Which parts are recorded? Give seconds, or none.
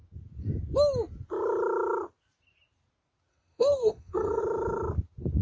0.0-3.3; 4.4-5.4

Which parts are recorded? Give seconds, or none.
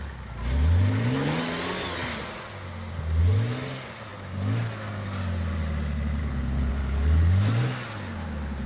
0.0-6.2; 6.7-8.7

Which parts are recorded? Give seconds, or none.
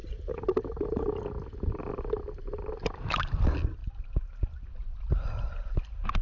none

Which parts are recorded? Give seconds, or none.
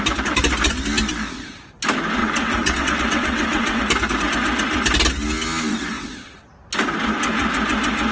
0.0-2.2; 3.8-5.7; 6.5-8.1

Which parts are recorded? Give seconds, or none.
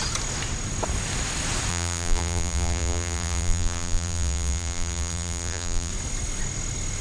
0.0-1.7; 5.9-7.0